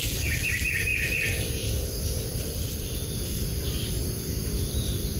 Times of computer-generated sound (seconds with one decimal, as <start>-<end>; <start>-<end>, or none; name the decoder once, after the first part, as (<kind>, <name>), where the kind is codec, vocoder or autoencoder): 0.0-5.2 (vocoder, BigVGAN v2)

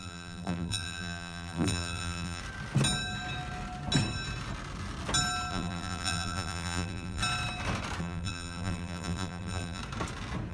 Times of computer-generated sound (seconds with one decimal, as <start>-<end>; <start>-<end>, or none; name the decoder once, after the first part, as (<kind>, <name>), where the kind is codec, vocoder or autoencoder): 0.0-2.4 (vocoder, BigVGAN v2); 5.5-7.2; 8.0-9.8

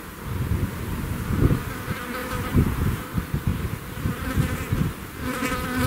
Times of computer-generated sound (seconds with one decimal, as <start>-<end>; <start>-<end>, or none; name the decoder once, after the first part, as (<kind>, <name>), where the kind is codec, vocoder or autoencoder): 2.2-2.9 (vocoder, BigVGAN v2); 3.5-4.3

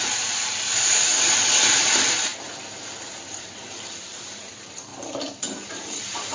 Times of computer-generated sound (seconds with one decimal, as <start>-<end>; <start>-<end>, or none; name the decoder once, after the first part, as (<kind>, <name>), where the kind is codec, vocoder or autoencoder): 0.0-1.1 (vocoder, BigVGAN v2); 1.7-2.3; 3.1-4.9; 5.7-6.3

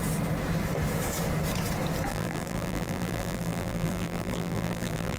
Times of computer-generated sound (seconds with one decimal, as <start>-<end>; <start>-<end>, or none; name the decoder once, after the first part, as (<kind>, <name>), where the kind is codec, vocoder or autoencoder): 2.1-5.2 (vocoder, BigVGAN v2)

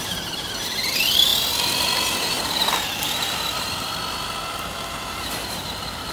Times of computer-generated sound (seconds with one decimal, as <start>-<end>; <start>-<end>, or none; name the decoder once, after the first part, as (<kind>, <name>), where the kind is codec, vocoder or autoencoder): 0.0-1.3 (vocoder, BigVGAN v2); 5.0-6.1

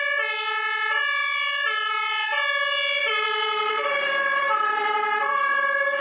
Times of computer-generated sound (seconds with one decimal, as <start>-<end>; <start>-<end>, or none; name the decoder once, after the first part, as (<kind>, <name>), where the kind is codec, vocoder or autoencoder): 3.0-6.0 (vocoder, BigVGAN v2)